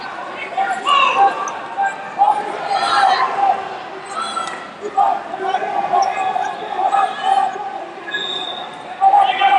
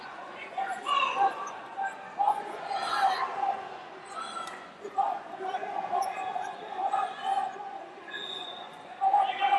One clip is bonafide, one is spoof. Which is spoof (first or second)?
second